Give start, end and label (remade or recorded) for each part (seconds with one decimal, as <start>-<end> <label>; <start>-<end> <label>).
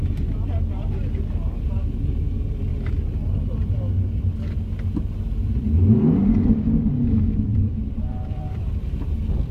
0.0-2.7 recorded; 2.7-3.8 remade; 3.8-7.5 recorded; 7.5-9.0 remade; 9.0-9.5 recorded